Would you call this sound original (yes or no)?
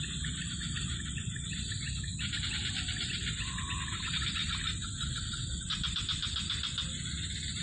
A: yes